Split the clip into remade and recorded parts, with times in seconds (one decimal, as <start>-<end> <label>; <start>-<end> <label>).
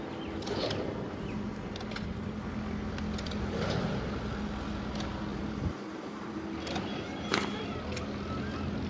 0.0-5.3 recorded; 5.3-7.1 remade; 7.1-8.9 recorded